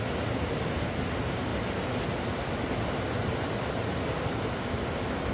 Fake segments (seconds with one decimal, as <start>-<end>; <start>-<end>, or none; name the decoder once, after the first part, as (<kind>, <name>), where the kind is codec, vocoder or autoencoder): none